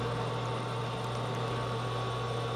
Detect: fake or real real